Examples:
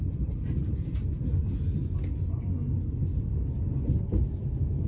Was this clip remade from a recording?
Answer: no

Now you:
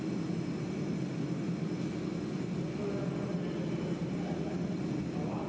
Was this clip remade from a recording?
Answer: no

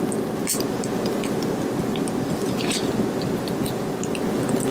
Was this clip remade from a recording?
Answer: no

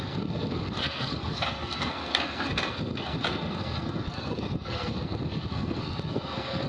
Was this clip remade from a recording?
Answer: yes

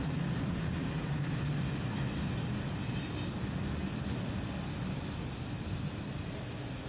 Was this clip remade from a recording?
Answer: no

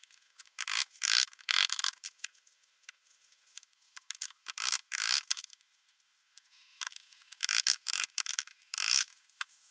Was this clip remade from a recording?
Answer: yes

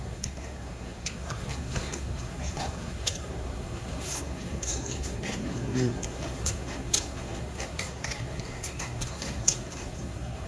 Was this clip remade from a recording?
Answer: yes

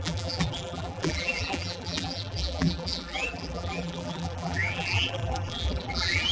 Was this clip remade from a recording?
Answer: yes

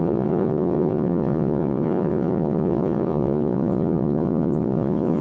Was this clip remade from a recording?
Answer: yes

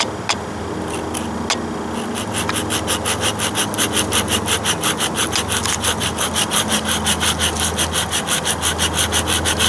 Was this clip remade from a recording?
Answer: no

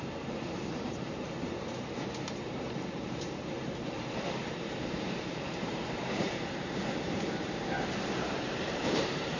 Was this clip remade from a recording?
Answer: yes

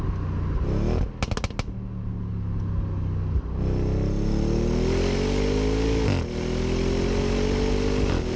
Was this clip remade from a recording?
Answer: no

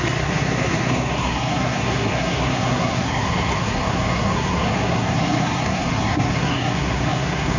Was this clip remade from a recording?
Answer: yes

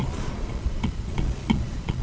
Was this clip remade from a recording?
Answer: yes